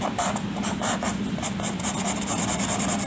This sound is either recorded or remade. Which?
recorded